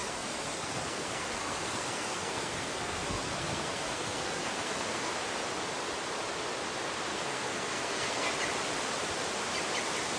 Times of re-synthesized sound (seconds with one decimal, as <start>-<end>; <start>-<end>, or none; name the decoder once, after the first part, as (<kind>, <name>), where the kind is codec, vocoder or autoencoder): 0.0-5.1 (codec, SNAC); 7.1-8.3